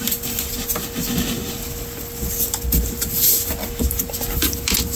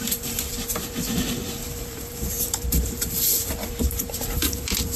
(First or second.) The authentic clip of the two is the first